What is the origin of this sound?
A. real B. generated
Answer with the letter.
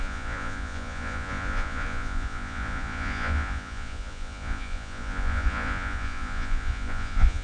B